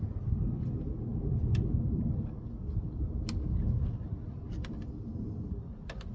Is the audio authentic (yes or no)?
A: yes